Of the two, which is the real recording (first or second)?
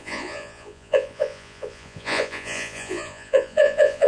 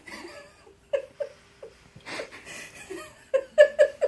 second